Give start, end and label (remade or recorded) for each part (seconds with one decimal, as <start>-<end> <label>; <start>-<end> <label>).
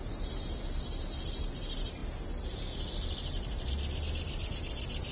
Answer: 0.0-5.1 recorded